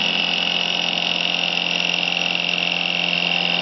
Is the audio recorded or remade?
recorded